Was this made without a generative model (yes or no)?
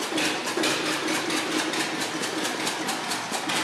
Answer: yes